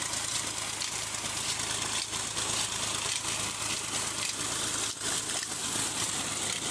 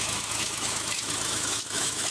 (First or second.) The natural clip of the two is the first